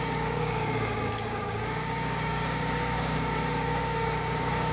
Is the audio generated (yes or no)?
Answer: yes